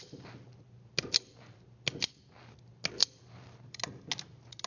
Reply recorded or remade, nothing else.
recorded